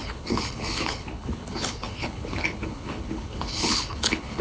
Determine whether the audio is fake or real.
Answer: fake